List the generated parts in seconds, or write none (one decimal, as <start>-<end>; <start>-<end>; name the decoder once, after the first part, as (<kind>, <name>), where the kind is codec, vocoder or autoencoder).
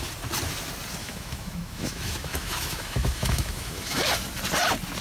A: 1.0-4.0 (autoencoder, DAC-VAE)